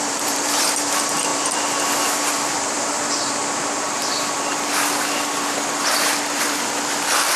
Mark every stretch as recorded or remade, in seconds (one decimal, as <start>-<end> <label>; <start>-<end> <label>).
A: 0.0-7.4 remade